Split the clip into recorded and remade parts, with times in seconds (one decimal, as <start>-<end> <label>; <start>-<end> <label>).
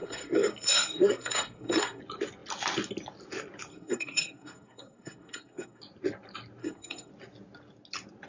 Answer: 0.0-2.0 remade; 2.0-3.7 recorded; 3.7-5.8 remade; 5.8-6.6 recorded; 6.6-7.1 remade; 7.1-8.3 recorded